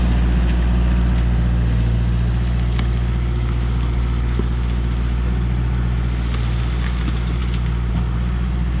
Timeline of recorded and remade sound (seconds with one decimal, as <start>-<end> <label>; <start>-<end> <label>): 0.0-8.8 recorded